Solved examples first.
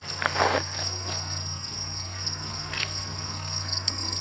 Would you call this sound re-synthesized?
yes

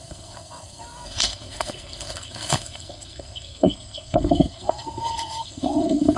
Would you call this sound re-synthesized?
yes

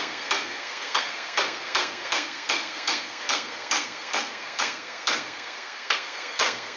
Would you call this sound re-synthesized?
yes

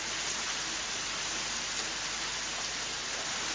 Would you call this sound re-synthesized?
no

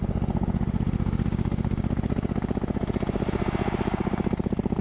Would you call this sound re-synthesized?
no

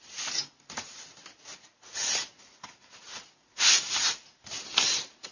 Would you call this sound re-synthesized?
no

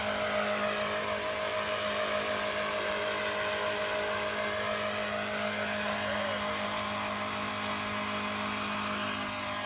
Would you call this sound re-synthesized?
no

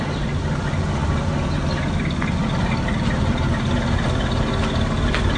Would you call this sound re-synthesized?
no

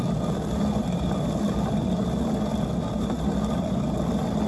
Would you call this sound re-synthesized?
no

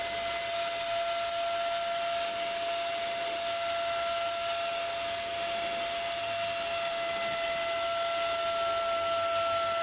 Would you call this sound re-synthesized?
no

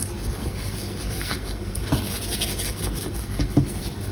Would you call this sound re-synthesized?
yes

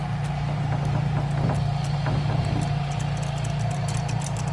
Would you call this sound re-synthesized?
no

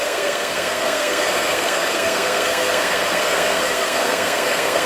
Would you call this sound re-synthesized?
yes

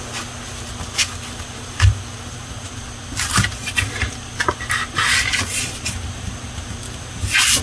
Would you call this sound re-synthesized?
no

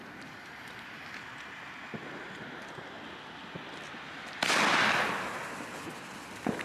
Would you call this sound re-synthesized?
no